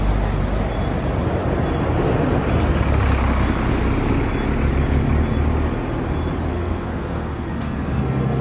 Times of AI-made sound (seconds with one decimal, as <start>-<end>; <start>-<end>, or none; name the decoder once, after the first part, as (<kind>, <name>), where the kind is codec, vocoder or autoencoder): 6.5-8.4 (codec, SNAC)